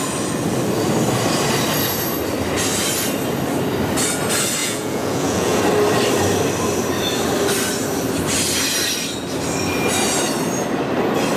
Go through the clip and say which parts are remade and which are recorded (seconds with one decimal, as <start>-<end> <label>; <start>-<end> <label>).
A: 0.0-4.6 recorded; 4.6-5.6 remade; 5.6-11.4 recorded